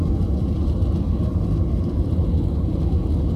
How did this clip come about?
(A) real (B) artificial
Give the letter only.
A